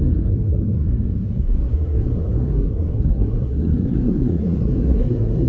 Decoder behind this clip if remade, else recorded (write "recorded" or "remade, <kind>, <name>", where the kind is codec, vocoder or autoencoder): remade, codec, SNAC